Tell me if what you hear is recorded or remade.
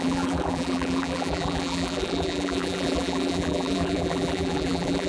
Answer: remade